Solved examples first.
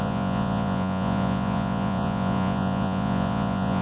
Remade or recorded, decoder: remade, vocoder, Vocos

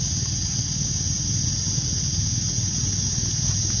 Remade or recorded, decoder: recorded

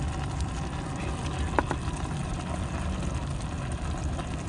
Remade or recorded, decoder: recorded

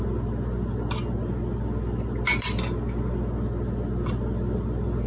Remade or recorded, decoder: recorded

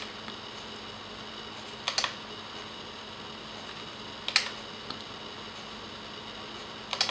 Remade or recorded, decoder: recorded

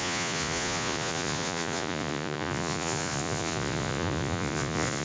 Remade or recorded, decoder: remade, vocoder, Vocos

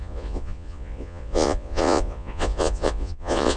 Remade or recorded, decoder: remade, vocoder, Vocos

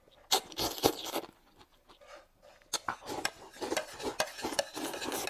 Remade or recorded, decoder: recorded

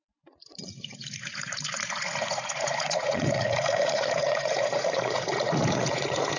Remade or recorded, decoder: remade, vocoder, Vocos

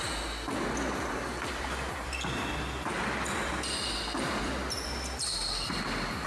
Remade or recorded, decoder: recorded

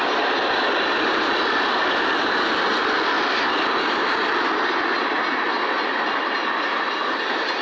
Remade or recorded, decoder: recorded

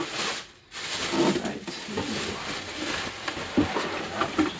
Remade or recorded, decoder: recorded